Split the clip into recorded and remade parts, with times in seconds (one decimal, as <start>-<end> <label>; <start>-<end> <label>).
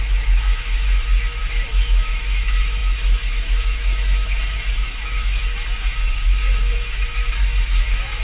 0.0-8.2 remade